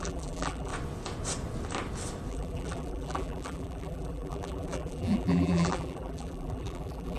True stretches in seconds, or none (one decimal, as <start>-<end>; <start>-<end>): 0.7-2.3